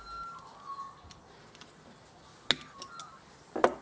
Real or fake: real